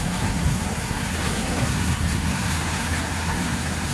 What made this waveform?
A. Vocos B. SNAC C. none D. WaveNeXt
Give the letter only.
B